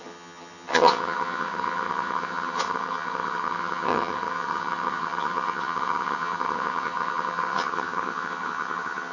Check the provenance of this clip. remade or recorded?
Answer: remade